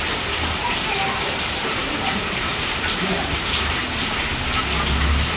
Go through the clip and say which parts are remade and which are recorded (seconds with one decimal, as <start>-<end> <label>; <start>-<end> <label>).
0.0-0.6 recorded; 0.6-3.8 remade; 3.8-5.4 recorded